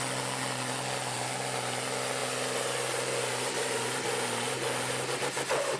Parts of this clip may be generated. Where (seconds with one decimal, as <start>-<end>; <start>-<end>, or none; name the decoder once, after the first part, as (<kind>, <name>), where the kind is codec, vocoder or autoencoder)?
none